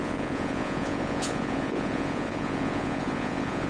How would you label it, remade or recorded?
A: remade